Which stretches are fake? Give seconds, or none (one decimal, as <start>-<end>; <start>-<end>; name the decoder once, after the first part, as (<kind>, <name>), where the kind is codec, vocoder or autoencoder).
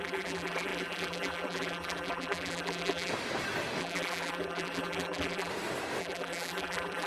0.0-3.1 (vocoder, BigVGAN v2); 3.8-5.5; 6.0-7.1